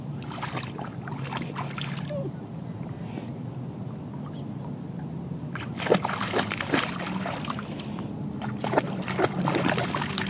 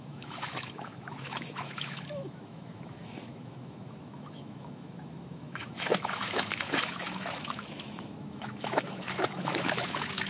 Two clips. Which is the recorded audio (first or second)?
first